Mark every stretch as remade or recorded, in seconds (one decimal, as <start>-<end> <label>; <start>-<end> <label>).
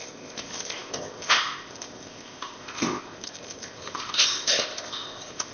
0.0-5.5 remade